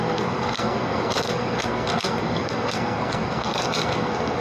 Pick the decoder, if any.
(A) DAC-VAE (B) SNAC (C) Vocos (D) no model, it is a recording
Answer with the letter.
B